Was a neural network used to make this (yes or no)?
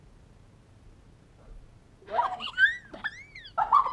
no